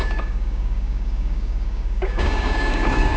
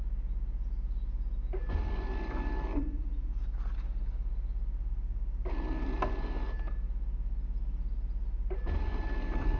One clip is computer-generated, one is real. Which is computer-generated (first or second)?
first